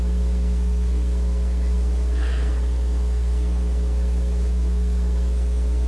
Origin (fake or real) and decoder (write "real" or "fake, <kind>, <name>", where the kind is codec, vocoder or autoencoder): fake, codec, SNAC